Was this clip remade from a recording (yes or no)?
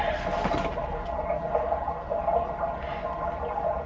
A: no